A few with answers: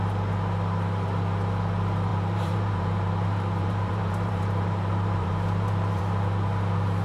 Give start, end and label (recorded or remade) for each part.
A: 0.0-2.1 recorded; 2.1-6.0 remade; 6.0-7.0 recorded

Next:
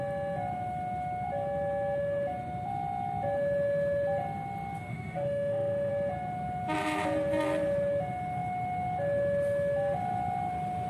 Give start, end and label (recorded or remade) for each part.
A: 0.0-4.9 recorded; 4.9-5.9 remade; 5.9-10.9 recorded

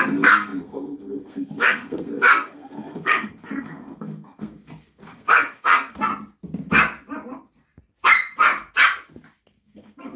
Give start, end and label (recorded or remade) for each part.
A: 0.0-6.1 remade; 6.1-9.6 recorded; 9.6-10.2 remade

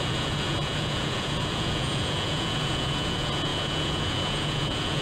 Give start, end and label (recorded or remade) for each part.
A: 0.0-5.0 remade

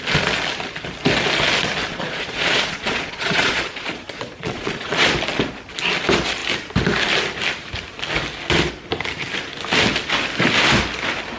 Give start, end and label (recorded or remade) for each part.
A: 0.0-1.9 recorded; 1.9-5.0 remade; 5.0-11.4 recorded

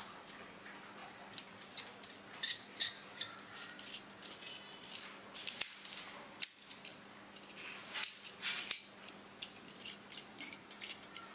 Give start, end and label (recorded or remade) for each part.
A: 0.0-1.0 remade; 1.0-5.9 recorded; 5.9-6.9 remade; 6.9-9.6 recorded; 9.6-11.3 remade